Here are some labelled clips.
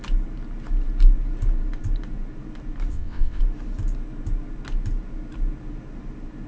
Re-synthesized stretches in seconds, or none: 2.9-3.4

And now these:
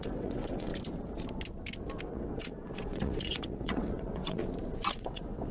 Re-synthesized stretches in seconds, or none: 0.0-0.7; 2.0-4.4; 4.9-5.5

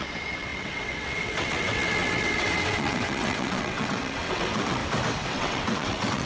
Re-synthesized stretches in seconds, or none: 0.0-4.8; 5.3-6.3

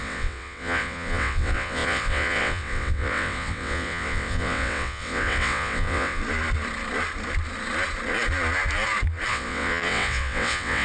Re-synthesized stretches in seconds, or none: 0.0-6.2; 9.3-10.8

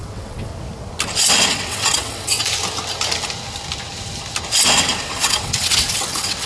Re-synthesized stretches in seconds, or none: 0.0-0.5; 1.5-2.4; 5.1-6.5